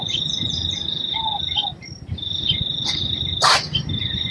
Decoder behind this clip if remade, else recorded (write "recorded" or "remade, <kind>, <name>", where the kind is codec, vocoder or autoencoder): remade, vocoder, BigVGAN v2